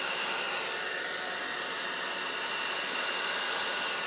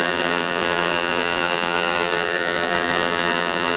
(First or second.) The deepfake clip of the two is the second